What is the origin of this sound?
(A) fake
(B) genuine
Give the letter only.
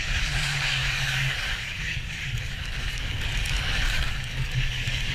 A